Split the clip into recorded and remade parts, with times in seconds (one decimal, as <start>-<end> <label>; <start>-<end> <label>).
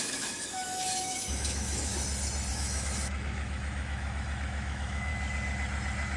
0.0-1.9 remade; 1.9-2.5 recorded; 2.5-5.1 remade; 5.1-6.2 recorded